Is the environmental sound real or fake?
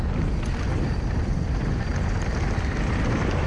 real